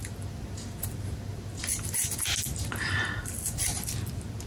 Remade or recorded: recorded